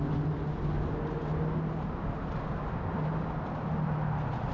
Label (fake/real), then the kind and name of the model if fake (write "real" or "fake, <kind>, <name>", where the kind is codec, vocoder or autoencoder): real